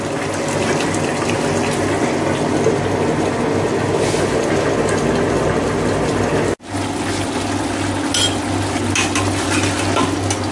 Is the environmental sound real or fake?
real